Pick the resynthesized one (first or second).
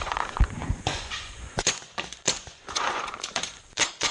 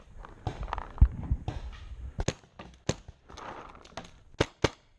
first